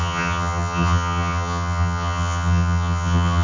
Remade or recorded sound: remade